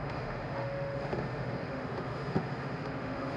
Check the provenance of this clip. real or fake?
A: fake